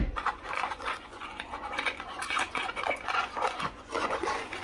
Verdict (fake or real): fake